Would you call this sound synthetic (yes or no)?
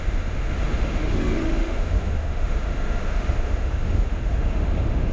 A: yes